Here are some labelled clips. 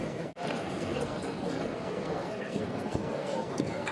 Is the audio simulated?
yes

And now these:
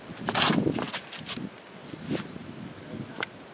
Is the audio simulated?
no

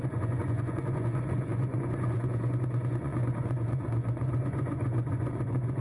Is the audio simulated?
yes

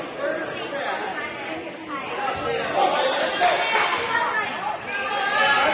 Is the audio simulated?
no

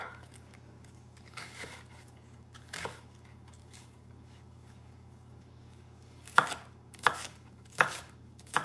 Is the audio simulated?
yes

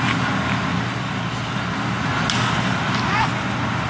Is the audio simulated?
no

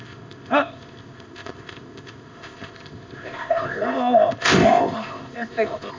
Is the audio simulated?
yes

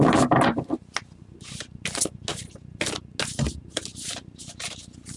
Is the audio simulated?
no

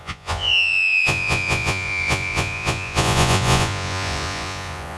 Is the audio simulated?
yes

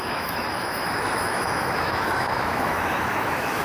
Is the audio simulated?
yes